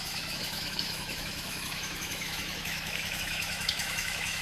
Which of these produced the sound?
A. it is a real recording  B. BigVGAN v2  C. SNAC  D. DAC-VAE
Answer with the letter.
D